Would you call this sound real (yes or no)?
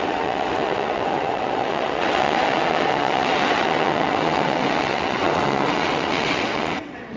no